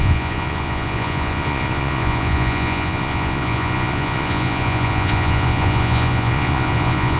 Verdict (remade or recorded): remade